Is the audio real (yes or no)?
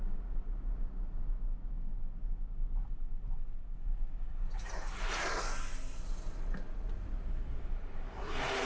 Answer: yes